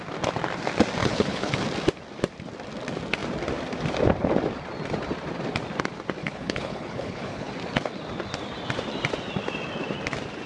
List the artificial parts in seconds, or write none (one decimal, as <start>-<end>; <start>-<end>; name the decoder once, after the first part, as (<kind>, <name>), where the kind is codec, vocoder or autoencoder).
1.0-1.5 (codec, HILCodec); 6.2-7.5